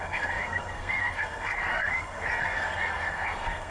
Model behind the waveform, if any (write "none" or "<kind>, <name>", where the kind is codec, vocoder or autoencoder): codec, SNAC